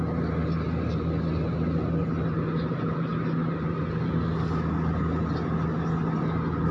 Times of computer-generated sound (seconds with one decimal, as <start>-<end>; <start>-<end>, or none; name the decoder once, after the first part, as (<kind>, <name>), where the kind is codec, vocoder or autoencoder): none